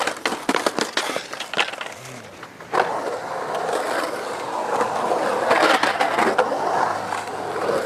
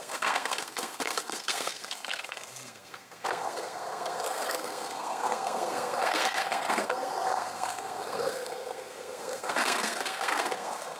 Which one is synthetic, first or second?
second